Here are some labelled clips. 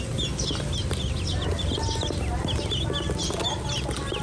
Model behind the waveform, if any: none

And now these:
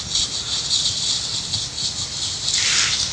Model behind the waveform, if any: none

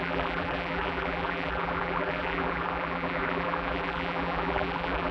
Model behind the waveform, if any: vocoder, BigVGAN v2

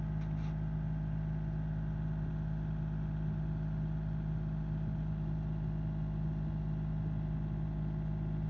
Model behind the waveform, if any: none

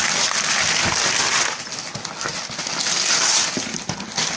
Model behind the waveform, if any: none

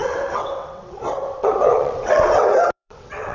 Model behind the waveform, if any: vocoder, WaveNeXt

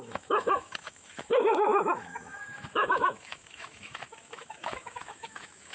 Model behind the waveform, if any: autoencoder, DAC-VAE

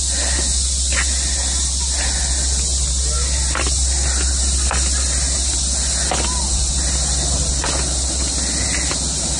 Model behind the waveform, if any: none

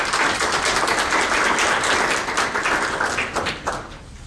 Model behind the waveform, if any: none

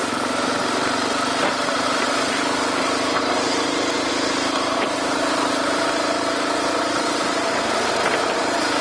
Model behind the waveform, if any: vocoder, BigVGAN v2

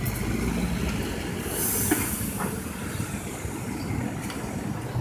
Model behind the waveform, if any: none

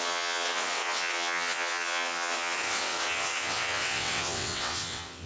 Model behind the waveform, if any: vocoder, WaveNeXt